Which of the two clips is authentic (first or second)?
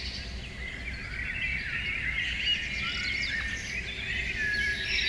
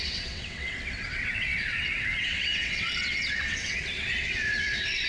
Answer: first